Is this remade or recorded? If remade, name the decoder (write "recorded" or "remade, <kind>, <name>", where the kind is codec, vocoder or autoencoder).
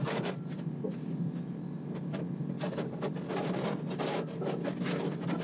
recorded